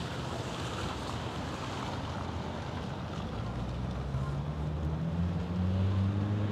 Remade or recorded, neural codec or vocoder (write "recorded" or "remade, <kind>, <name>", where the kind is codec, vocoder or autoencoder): recorded